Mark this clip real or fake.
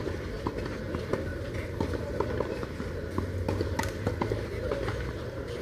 real